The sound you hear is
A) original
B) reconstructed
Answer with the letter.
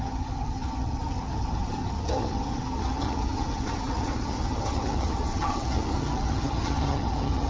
B